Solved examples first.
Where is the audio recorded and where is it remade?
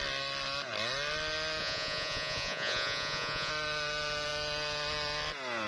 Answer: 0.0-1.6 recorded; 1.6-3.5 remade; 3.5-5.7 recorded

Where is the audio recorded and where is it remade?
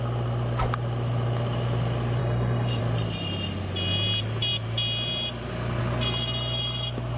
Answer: 0.0-2.2 recorded; 2.2-2.8 remade; 2.8-7.2 recorded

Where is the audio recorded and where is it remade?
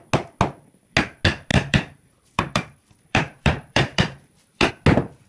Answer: 0.0-1.5 recorded; 1.5-4.7 remade; 4.7-5.3 recorded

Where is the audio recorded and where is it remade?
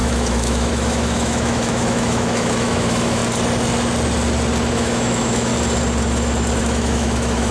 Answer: 0.0-3.2 remade; 3.2-4.7 recorded; 4.7-5.5 remade; 5.5-6.6 recorded; 6.6-7.5 remade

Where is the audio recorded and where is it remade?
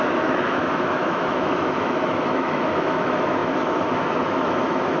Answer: 0.0-5.0 remade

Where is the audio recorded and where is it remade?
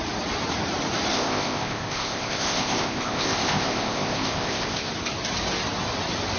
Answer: 0.0-1.1 recorded; 1.1-4.9 remade; 4.9-6.4 recorded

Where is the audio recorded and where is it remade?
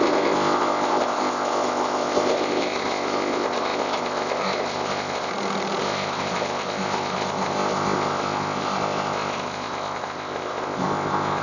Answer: 0.0-5.3 remade; 5.3-5.8 recorded; 5.8-11.4 remade